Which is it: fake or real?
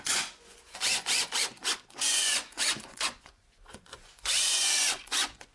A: fake